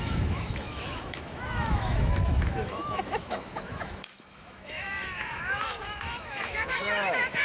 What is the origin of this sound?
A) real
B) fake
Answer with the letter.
B